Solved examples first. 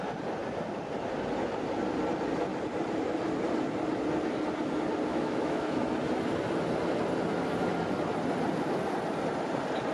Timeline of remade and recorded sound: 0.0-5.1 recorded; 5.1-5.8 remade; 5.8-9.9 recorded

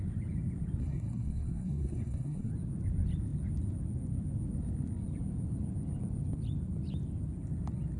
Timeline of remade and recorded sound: 0.0-0.8 recorded; 0.8-2.5 remade; 2.5-8.0 recorded